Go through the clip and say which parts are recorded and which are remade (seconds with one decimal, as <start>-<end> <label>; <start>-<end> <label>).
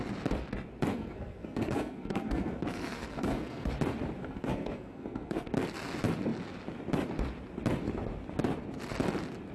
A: 0.0-0.9 recorded; 0.9-3.7 remade; 3.7-4.2 recorded; 4.2-5.5 remade; 5.5-9.5 recorded